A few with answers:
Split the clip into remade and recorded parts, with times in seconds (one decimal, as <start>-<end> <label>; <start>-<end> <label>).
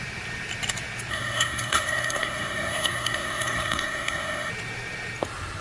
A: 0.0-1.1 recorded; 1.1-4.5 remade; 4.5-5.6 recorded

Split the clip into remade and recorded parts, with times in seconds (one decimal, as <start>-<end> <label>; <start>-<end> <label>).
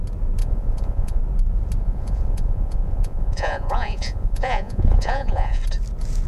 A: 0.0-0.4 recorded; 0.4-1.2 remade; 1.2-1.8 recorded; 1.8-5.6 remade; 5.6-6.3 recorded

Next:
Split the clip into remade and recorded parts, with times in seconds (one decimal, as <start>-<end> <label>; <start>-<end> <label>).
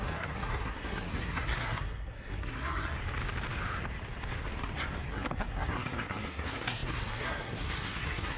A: 0.0-3.0 remade; 3.0-5.1 recorded; 5.1-8.4 remade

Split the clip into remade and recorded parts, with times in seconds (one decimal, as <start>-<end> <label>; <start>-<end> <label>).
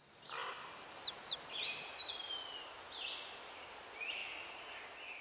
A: 0.0-5.2 recorded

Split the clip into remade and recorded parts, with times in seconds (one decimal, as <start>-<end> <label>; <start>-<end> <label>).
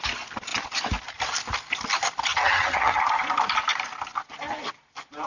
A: 0.0-2.3 recorded; 2.3-3.0 remade; 3.0-5.3 recorded